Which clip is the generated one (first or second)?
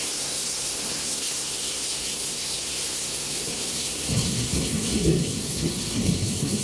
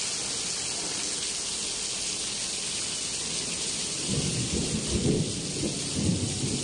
first